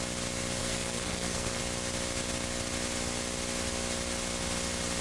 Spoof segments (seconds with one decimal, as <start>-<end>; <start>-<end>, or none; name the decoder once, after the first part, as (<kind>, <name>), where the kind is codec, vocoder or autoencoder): 0.6-1.6 (codec, SNAC)